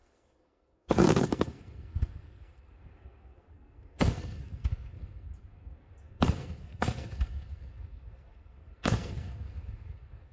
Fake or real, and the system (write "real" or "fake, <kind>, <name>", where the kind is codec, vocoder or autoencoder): fake, codec, SNAC